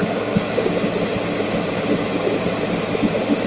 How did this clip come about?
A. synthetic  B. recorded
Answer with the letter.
B